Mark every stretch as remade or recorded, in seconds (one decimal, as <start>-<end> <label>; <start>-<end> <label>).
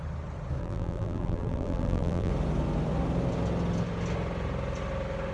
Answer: 0.0-0.6 recorded; 0.6-2.3 remade; 2.3-5.3 recorded